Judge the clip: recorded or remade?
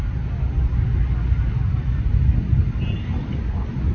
recorded